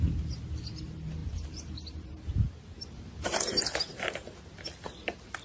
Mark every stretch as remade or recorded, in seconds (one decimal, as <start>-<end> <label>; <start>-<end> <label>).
0.0-5.4 recorded